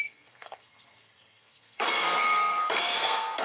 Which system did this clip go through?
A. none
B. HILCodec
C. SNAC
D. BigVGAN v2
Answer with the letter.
C